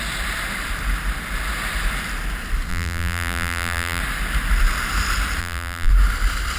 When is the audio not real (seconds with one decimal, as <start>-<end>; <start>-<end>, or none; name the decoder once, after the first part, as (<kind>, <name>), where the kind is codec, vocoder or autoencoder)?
2.7-4.0 (vocoder, BigVGAN v2); 5.4-5.9